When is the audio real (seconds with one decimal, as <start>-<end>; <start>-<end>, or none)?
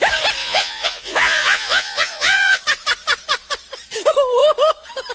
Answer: 0.0-0.4; 2.6-5.1